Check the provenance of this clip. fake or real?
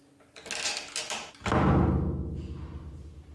real